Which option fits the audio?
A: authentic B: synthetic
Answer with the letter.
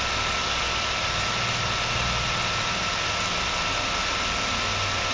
A